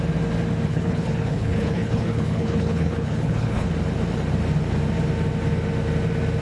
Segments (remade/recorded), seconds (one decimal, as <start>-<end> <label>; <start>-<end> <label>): 0.0-0.7 recorded; 0.7-3.7 remade; 3.7-6.4 recorded